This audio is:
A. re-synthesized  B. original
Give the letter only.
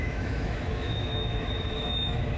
A